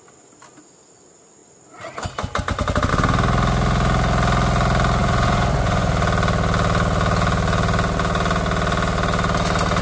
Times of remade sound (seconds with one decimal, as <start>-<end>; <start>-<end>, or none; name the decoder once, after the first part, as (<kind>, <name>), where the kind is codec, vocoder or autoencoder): 5.0-5.9 (vocoder, Vocos)